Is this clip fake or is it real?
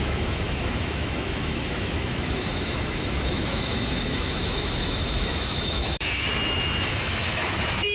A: fake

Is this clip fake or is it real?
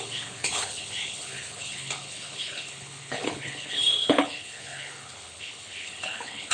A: fake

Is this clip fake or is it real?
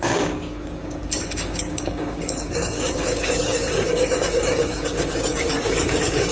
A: fake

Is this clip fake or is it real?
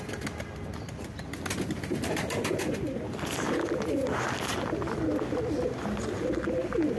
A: real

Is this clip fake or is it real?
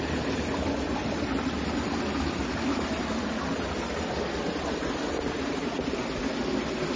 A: real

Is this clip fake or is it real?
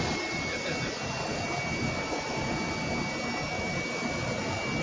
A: real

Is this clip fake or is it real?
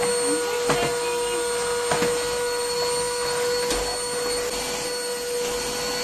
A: real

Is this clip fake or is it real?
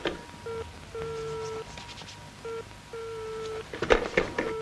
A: real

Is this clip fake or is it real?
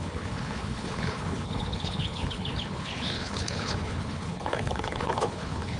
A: fake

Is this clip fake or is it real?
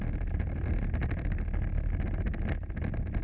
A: real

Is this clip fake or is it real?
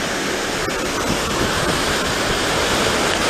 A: real